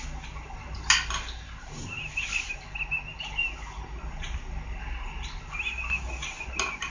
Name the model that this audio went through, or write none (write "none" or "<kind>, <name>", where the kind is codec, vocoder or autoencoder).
none